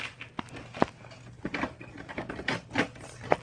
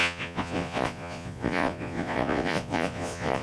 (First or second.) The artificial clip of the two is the second